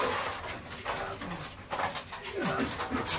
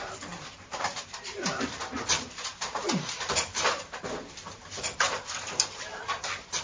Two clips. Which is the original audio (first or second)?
first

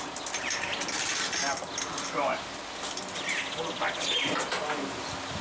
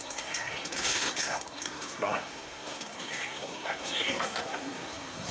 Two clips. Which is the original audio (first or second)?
first